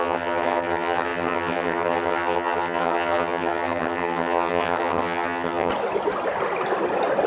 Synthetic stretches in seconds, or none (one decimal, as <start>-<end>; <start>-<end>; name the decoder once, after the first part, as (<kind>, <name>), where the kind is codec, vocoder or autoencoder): 0.0-5.7 (vocoder, HiFi-GAN)